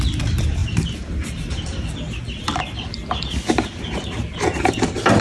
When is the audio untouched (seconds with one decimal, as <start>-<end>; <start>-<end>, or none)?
0.0-5.2